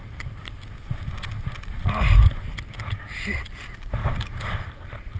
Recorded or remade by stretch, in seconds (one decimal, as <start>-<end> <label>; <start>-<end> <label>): 0.0-4.0 recorded; 4.0-4.5 remade; 4.5-5.2 recorded